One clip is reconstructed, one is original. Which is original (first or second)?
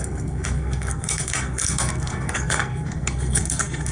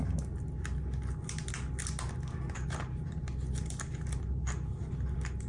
second